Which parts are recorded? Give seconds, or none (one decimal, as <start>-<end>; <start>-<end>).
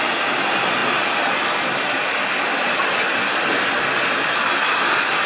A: 0.0-5.3